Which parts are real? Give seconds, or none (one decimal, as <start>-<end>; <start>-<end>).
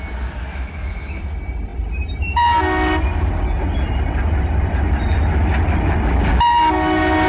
0.0-0.5; 1.2-7.3